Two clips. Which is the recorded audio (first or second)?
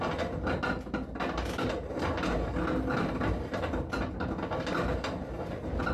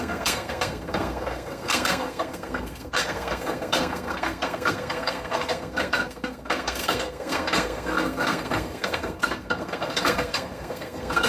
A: first